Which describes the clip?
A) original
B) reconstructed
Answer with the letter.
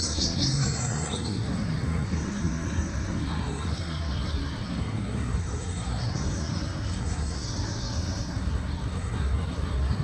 B